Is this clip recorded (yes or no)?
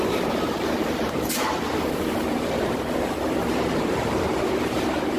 no